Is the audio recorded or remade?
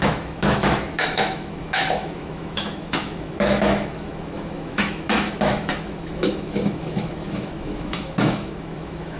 remade